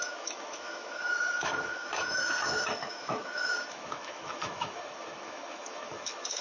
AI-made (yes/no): yes